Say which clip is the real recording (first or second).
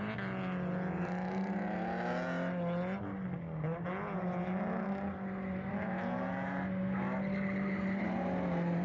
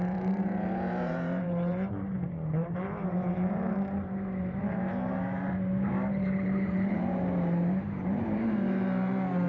first